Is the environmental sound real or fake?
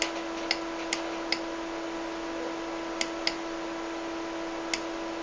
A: real